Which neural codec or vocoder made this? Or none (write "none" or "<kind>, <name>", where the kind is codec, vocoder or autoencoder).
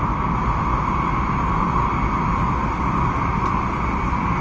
none